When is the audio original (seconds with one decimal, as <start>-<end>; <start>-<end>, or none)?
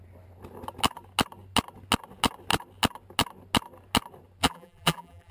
0.0-4.4